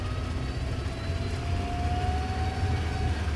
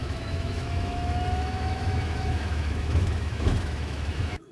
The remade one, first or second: second